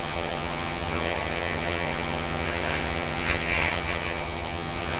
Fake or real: fake